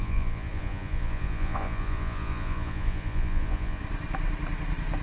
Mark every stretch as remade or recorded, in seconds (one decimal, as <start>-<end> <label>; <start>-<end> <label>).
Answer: 0.0-3.8 remade; 3.8-5.0 recorded